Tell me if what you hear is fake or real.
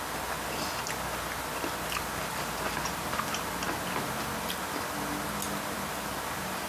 real